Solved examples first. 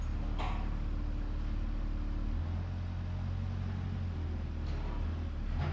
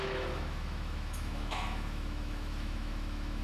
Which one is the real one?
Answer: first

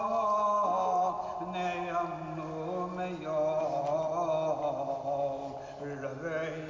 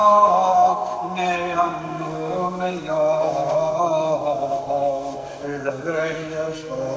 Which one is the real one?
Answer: first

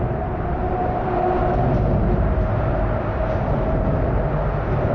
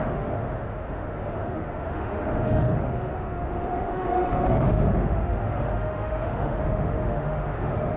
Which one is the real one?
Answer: first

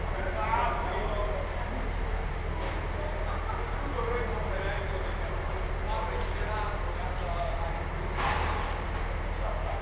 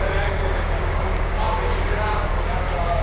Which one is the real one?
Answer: first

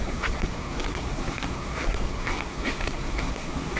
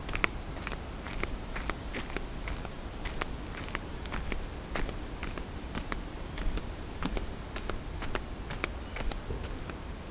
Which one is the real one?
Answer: second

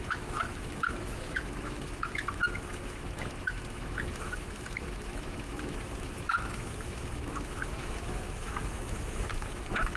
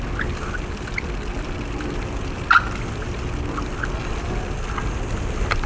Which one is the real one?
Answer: second